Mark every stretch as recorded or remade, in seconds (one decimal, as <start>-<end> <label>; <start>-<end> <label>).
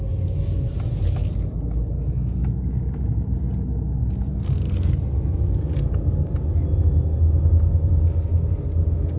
0.0-9.2 recorded